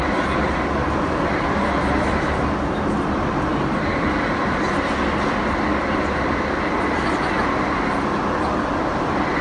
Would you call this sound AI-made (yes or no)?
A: no